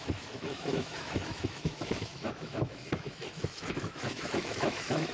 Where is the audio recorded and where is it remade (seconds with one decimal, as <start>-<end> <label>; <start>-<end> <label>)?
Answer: 0.0-5.1 remade